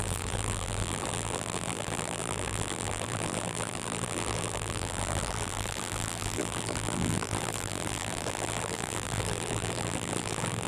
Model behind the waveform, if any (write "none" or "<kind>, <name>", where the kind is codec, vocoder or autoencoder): vocoder, BigVGAN v2